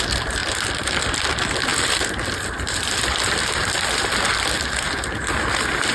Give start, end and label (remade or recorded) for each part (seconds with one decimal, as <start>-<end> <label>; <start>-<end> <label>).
0.0-5.9 remade